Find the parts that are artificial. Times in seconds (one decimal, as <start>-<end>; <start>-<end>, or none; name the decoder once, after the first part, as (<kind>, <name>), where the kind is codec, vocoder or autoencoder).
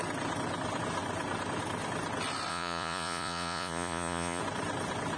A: 2.5-4.4 (vocoder, Vocos)